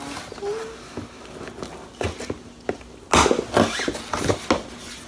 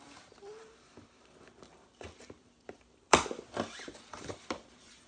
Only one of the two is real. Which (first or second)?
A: first